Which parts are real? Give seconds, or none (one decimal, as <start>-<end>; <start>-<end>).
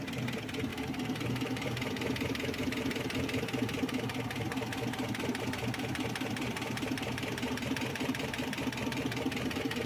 none